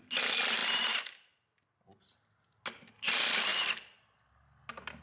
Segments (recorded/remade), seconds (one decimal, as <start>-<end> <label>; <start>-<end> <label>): 0.0-5.0 recorded